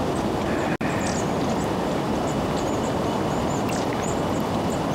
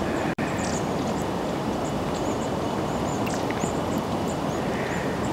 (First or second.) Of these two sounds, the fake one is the second